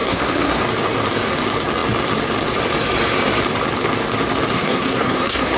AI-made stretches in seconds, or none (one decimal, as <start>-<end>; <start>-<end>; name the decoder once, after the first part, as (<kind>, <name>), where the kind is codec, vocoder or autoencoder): 0.0-0.6 (codec, SNAC); 4.5-5.6